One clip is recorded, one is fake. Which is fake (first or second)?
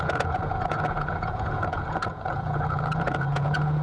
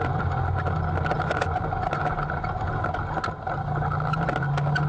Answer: first